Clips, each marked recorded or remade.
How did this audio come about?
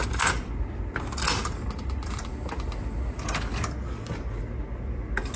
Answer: recorded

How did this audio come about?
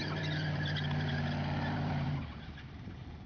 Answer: remade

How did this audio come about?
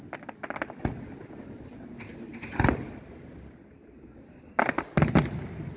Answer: recorded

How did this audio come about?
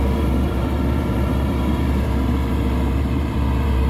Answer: remade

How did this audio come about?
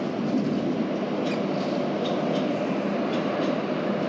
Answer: recorded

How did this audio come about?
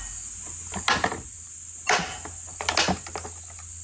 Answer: recorded